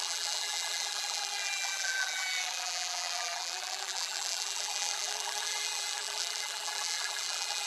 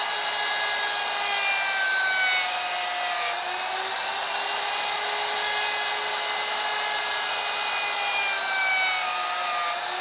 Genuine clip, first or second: second